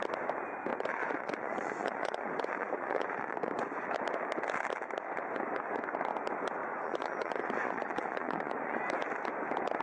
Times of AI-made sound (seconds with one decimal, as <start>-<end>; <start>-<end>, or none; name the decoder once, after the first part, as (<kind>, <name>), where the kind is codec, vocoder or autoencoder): 0.7-3.6 (vocoder, Vocos); 6.6-8.8